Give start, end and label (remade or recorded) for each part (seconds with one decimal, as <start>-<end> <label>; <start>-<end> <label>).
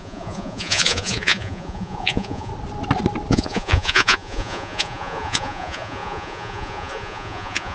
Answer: 0.0-2.5 remade; 2.5-3.3 recorded; 3.3-7.7 remade